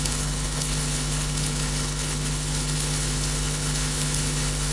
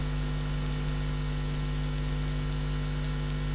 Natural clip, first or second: second